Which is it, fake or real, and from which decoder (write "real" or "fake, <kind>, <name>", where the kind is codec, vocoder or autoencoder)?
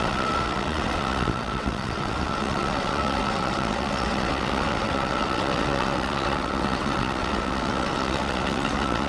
fake, vocoder, WaveNeXt